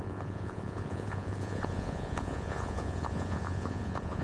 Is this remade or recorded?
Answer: remade